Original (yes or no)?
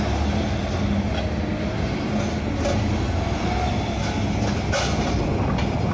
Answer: yes